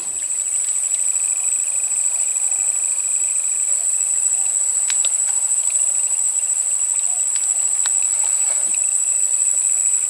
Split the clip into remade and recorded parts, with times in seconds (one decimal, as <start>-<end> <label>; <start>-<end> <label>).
0.0-10.1 recorded